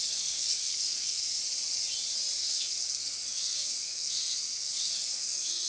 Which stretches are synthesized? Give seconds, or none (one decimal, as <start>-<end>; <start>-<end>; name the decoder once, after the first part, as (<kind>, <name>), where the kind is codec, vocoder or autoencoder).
0.0-1.4 (codec, SNAC); 2.4-5.7